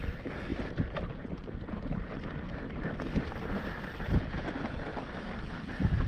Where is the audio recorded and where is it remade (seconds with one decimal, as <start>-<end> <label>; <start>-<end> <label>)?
0.0-6.1 recorded